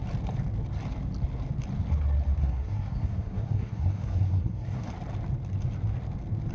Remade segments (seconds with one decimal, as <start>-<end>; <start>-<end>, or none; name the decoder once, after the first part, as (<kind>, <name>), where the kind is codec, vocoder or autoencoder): 2.4-4.9 (codec, SNAC)